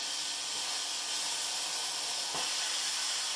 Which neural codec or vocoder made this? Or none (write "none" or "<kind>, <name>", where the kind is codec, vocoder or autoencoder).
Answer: none